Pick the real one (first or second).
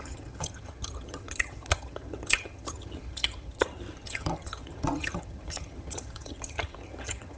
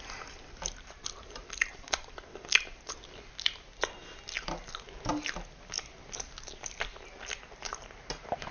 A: second